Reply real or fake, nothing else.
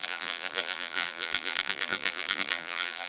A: fake